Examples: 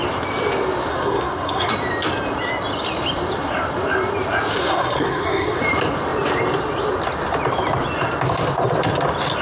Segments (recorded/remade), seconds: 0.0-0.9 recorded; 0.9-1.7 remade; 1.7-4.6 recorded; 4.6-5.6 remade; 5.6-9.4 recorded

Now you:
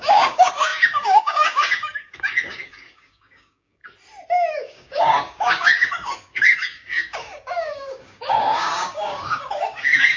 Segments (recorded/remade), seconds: 0.0-3.8 remade; 3.8-4.5 recorded; 4.5-10.2 remade

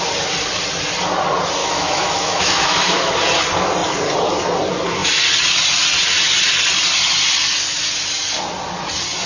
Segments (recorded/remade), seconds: 0.0-1.6 recorded; 1.6-3.1 remade; 3.1-9.3 recorded